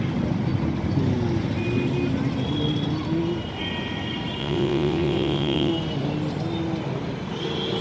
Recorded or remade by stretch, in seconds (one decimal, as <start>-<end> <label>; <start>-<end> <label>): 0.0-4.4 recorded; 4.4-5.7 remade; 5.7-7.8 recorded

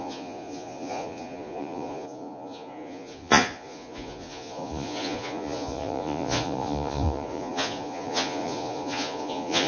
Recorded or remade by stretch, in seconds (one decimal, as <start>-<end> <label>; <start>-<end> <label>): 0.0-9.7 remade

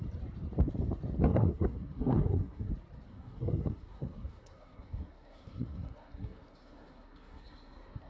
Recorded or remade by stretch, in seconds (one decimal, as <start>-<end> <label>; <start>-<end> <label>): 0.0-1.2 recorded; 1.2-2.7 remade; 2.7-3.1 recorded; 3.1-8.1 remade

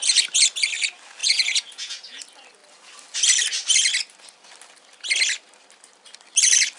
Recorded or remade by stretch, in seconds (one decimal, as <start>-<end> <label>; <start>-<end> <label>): 0.0-1.2 recorded; 1.2-2.2 remade; 2.2-6.8 recorded

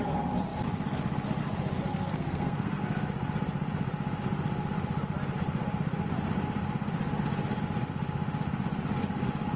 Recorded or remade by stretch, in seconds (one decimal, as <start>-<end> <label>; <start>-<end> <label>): 0.0-1.9 recorded; 1.9-2.8 remade; 2.8-9.6 recorded

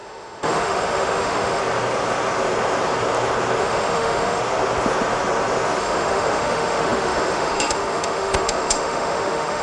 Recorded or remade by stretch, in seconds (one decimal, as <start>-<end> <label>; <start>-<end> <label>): 0.0-1.6 remade; 1.6-3.6 recorded; 3.6-4.4 remade; 4.4-5.8 recorded; 5.8-9.6 remade